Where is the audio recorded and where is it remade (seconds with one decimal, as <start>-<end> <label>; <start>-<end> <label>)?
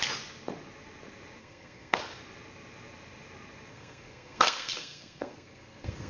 0.0-1.4 recorded; 1.4-2.0 remade; 2.0-3.7 recorded; 3.7-6.1 remade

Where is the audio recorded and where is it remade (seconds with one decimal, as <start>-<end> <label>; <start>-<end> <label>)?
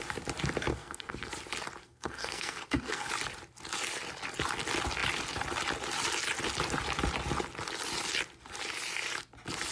0.0-0.7 recorded; 0.7-1.3 remade; 1.3-1.8 recorded; 1.8-3.1 remade; 3.1-9.7 recorded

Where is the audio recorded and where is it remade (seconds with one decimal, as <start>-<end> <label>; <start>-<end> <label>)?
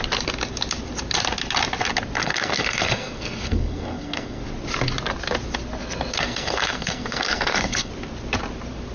0.0-2.2 recorded; 2.2-4.4 remade; 4.4-6.1 recorded; 6.1-7.9 remade; 7.9-8.9 recorded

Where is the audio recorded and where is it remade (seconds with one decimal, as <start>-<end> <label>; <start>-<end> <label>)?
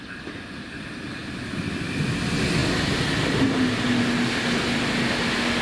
0.0-5.6 recorded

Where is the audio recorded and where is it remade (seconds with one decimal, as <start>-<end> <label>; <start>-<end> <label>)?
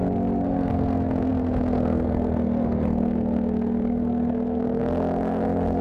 0.0-5.8 remade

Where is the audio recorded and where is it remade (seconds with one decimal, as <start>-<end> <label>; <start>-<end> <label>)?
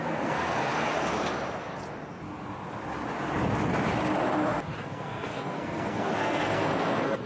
0.0-0.7 remade; 0.7-4.8 recorded; 4.8-7.3 remade